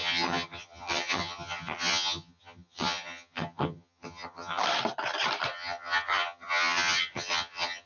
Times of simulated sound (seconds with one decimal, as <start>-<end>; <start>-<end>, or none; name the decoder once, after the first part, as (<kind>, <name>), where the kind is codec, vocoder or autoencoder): 0.0-4.6 (vocoder, HiFi-GAN); 5.5-7.9